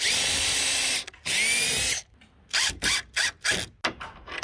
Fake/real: real